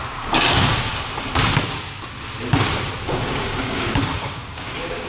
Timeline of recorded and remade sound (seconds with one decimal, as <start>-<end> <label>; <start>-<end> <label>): 0.0-0.9 remade; 0.9-3.1 recorded; 3.1-5.1 remade

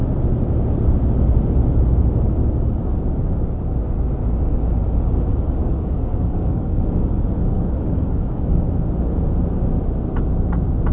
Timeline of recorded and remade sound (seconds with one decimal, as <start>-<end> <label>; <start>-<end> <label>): 0.0-5.6 recorded; 5.6-8.6 remade; 8.6-10.9 recorded

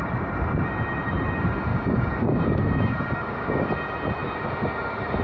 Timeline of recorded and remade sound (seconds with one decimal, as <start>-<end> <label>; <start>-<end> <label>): 0.0-1.7 recorded; 1.7-3.7 remade; 3.7-5.2 recorded

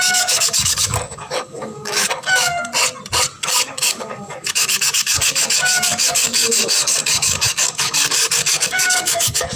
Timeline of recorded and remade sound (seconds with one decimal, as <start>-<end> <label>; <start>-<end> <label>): 0.0-2.7 remade; 2.7-3.4 recorded; 3.4-9.6 remade